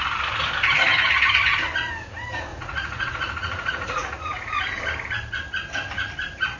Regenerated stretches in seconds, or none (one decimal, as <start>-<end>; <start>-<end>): 2.5-4.6